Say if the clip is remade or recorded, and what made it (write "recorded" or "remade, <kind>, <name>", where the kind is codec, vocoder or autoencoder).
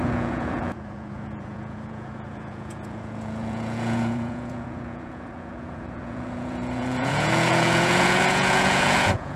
remade, vocoder, Vocos